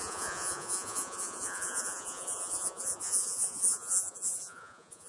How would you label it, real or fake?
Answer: fake